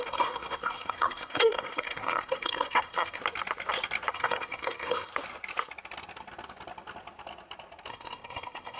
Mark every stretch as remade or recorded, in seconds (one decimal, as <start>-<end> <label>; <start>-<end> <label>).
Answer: 0.0-3.2 remade; 3.2-4.1 recorded; 4.1-5.1 remade; 5.1-7.9 recorded; 7.9-8.8 remade